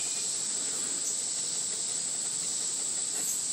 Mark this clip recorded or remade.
recorded